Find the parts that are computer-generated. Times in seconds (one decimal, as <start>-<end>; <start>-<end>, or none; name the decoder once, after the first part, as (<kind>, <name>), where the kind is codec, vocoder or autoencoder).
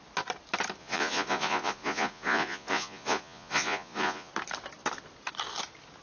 0.8-4.3 (vocoder, Vocos)